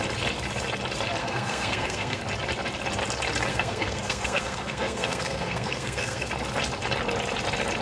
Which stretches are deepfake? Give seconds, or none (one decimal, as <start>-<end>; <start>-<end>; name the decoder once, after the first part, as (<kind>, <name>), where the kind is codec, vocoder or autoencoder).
1.2-2.2 (codec, SNAC); 3.5-6.3